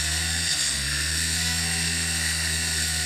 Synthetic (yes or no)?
yes